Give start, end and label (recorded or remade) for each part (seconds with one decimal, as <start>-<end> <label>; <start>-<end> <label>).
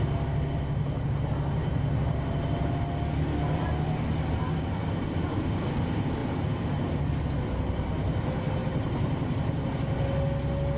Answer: 0.0-1.6 recorded; 1.6-2.8 remade; 2.8-6.2 recorded; 6.2-7.0 remade; 7.0-8.6 recorded; 8.6-9.6 remade; 9.6-10.8 recorded